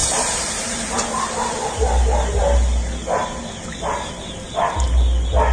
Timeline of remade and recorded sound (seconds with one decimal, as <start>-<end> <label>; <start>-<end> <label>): 0.0-1.2 remade; 1.2-5.5 recorded

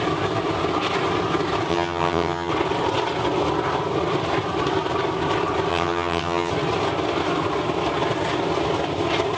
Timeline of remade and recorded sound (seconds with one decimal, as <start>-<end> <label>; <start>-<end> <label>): 0.0-1.7 recorded; 1.7-2.5 remade; 2.5-5.7 recorded; 5.7-6.5 remade; 6.5-9.4 recorded

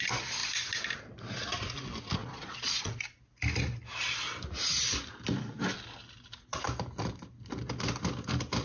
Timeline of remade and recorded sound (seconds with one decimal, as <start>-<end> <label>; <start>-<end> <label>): 0.0-2.2 recorded; 2.2-3.0 remade; 3.0-8.6 recorded

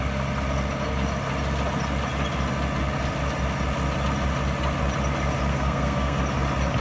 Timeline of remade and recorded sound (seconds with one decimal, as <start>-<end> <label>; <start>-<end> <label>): 0.0-5.5 recorded; 5.5-6.2 remade; 6.2-6.8 recorded

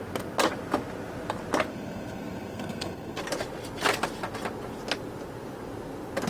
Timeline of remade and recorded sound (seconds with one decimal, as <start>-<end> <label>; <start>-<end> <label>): 0.0-1.7 recorded; 1.7-3.2 remade; 3.2-6.3 recorded

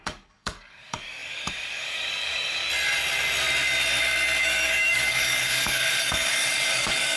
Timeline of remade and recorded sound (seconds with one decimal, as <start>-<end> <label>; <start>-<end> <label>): 0.0-2.6 remade; 2.6-4.4 recorded; 4.4-7.2 remade

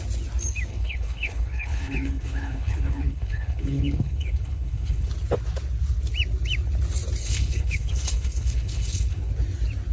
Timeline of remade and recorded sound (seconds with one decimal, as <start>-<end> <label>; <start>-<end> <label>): 0.0-0.7 recorded; 0.7-5.1 remade; 5.1-7.2 recorded; 7.2-9.3 remade; 9.3-9.9 recorded